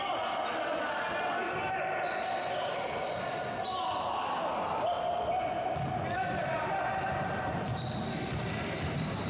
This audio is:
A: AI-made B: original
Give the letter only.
B